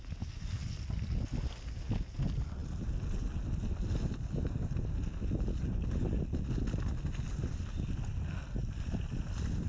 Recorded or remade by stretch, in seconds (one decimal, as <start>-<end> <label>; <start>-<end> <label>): 0.0-9.7 recorded